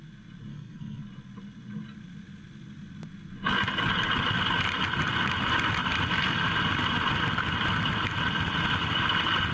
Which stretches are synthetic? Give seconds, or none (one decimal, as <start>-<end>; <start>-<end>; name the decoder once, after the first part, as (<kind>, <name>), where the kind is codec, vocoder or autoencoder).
0.5-1.0 (codec, SNAC)